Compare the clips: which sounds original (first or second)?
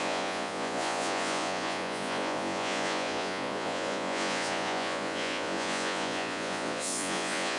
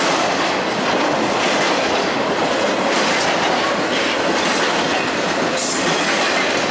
second